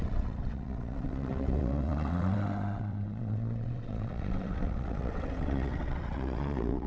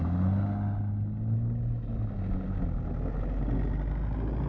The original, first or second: second